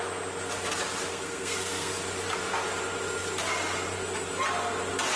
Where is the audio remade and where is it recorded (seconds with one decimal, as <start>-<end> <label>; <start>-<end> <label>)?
0.0-1.1 recorded; 1.1-1.9 remade; 1.9-5.2 recorded